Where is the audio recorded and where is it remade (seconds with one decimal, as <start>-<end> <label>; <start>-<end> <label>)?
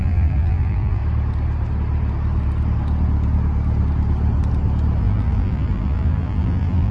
0.0-1.0 remade; 1.0-5.0 recorded; 5.0-6.9 remade